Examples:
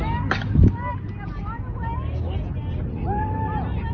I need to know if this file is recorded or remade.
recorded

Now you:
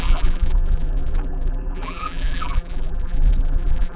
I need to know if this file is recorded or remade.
remade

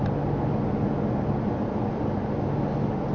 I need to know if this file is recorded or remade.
recorded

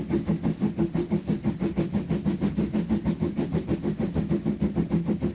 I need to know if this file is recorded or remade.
recorded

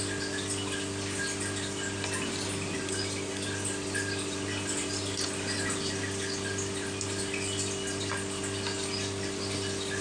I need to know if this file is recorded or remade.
recorded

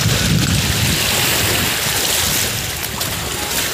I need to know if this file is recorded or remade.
recorded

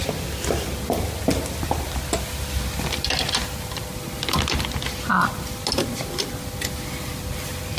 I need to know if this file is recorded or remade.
recorded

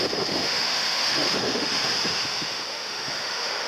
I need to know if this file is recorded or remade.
remade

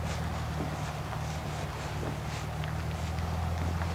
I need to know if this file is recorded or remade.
recorded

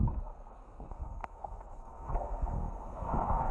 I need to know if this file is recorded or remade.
remade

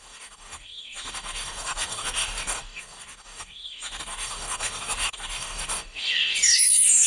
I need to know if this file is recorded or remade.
remade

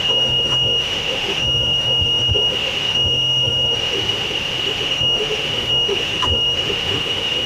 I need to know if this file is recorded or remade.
remade